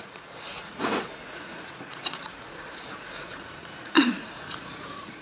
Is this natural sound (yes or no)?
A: no